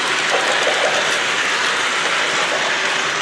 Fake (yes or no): yes